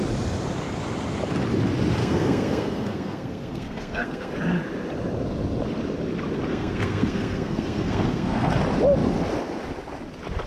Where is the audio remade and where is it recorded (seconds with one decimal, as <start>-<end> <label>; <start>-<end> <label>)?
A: 0.0-2.0 recorded; 2.0-4.3 remade; 4.3-6.5 recorded; 6.5-8.5 remade; 8.5-10.5 recorded